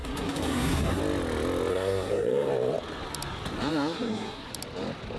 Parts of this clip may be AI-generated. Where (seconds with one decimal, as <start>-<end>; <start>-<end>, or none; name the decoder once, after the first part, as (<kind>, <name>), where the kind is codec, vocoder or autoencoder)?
0.0-1.0 (codec, SNAC); 1.7-2.5; 3.7-4.5